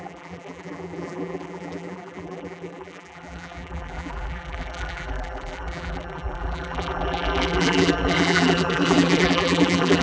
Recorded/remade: remade